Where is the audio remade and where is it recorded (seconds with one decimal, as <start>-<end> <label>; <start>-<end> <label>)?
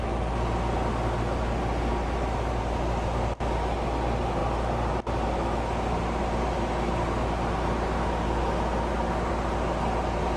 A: 0.0-10.4 recorded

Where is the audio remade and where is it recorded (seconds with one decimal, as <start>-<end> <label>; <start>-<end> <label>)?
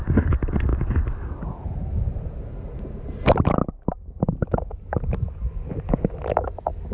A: 0.0-6.9 recorded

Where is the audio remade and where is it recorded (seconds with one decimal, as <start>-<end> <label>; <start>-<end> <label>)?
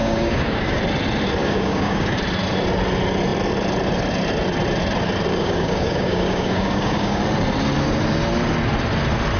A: 0.0-0.8 remade; 0.8-1.4 recorded; 1.4-2.2 remade; 2.2-5.3 recorded; 5.3-7.2 remade; 7.2-9.4 recorded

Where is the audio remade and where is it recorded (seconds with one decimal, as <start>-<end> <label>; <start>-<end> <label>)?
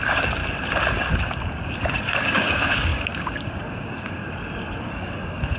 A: 0.0-0.4 remade; 0.4-0.9 recorded; 0.9-4.2 remade; 4.2-4.8 recorded; 4.8-5.6 remade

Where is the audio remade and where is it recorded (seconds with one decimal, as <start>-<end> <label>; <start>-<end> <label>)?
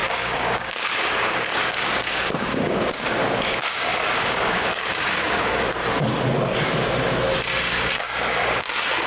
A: 0.0-5.7 remade; 5.7-8.0 recorded; 8.0-9.1 remade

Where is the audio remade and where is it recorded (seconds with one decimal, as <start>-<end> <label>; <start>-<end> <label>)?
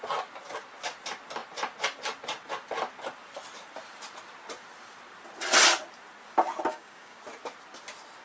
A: 0.0-6.7 recorded; 6.7-7.2 remade; 7.2-8.2 recorded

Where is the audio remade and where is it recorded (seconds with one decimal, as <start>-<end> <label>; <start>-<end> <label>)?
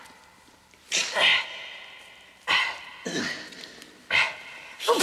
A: 0.0-5.0 recorded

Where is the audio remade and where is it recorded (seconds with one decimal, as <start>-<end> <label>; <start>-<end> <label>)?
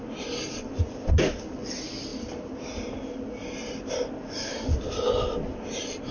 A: 0.0-6.1 recorded